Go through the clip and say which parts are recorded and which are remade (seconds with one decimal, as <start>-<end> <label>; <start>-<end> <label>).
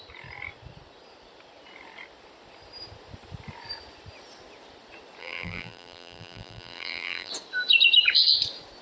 0.0-5.2 recorded; 5.2-7.3 remade; 7.3-8.8 recorded